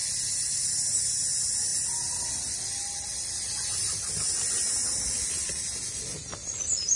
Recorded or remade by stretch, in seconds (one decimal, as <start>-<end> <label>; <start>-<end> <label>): 0.0-7.0 recorded